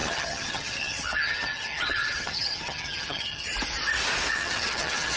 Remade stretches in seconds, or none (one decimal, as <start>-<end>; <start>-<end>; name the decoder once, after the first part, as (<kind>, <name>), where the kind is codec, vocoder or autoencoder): 0.0-3.5 (vocoder, HiFi-GAN); 4.3-5.2